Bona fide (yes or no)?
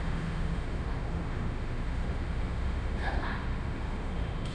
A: no